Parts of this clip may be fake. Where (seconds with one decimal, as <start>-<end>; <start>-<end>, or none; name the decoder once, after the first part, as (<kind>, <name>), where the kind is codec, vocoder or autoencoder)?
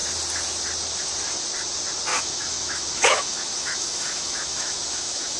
2.1-5.4 (autoencoder, DAC-VAE)